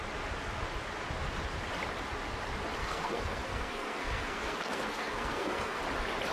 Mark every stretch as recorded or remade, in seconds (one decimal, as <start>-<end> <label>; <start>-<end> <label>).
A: 0.0-2.8 recorded; 2.8-5.8 remade; 5.8-6.3 recorded